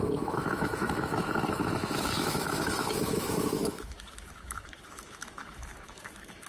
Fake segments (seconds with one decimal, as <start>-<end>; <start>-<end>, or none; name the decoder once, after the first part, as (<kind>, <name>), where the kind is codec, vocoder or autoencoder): 0.0-6.5 (autoencoder, DAC-VAE)